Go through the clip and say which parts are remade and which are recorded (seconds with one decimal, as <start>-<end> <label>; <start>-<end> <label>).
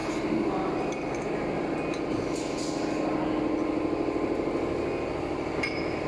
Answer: 0.0-6.1 recorded